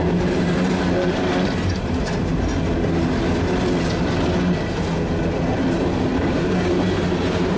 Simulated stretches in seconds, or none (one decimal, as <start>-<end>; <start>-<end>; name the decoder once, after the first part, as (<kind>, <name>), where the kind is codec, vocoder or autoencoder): 0.0-2.5 (vocoder, BigVGAN v2); 5.5-7.6